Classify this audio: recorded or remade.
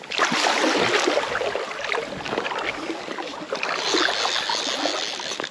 recorded